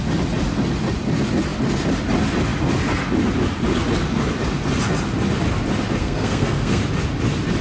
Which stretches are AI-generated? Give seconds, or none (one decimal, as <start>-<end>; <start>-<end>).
6.0-6.8